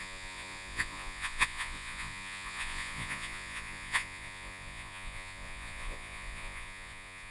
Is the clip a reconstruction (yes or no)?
yes